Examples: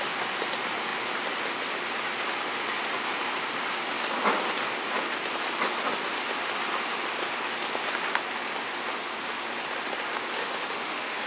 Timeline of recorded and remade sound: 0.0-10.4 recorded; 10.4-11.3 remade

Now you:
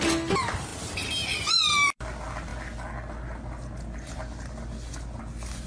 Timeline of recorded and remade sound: 0.0-5.7 recorded

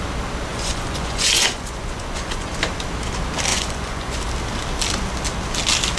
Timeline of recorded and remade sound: 0.0-0.5 recorded; 0.5-2.5 remade; 2.5-3.5 recorded; 3.5-4.2 remade; 4.2-6.0 recorded

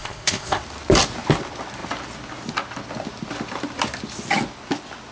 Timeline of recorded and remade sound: 0.0-0.6 remade; 0.6-5.1 recorded